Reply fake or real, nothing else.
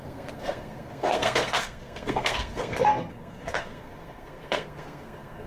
fake